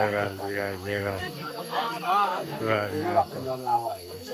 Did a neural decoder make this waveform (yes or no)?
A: yes